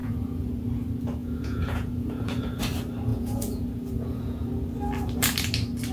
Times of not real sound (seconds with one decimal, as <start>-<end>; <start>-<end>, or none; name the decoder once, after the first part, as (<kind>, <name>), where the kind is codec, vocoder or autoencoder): 0.0-0.5 (vocoder, Vocos); 1.2-2.6; 3.1-4.5